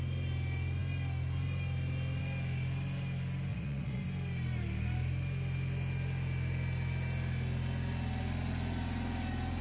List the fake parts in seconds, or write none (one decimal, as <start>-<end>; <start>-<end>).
3.5-4.0